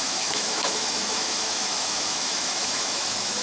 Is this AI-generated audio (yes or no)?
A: yes